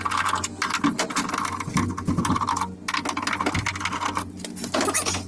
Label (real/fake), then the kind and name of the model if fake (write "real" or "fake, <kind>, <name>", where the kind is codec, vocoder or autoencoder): real